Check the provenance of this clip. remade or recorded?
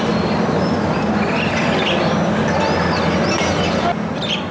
recorded